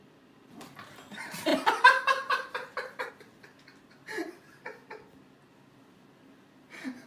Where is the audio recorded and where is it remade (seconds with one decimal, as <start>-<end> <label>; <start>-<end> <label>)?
0.0-1.5 recorded; 1.5-3.1 remade; 3.1-7.1 recorded